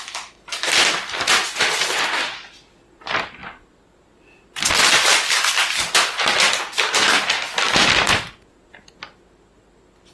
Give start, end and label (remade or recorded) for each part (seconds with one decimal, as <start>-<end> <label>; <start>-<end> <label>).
0.0-10.1 recorded